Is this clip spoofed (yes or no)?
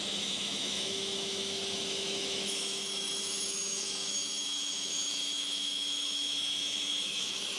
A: yes